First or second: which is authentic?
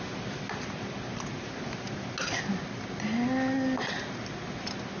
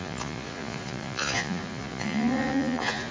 first